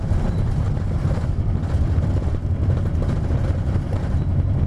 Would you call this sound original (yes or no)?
no